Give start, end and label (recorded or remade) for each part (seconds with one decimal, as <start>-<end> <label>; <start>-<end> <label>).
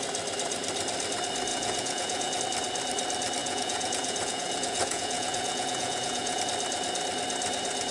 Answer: 0.0-1.5 recorded; 1.5-2.4 remade; 2.4-3.4 recorded; 3.4-6.4 remade; 6.4-7.9 recorded